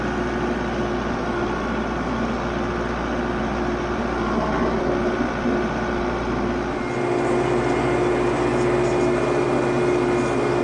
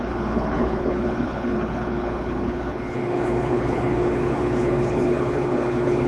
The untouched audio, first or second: first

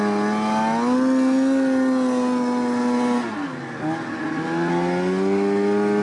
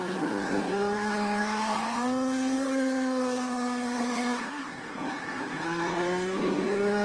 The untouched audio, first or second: first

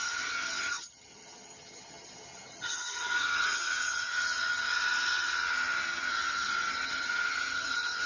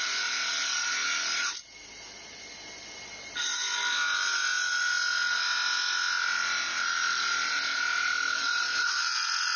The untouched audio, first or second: second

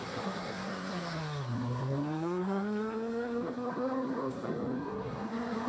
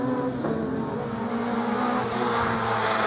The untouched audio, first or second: second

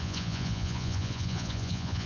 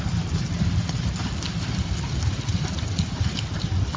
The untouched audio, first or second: second